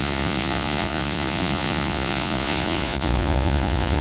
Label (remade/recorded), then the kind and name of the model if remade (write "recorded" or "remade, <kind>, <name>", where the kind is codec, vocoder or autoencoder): remade, vocoder, Vocos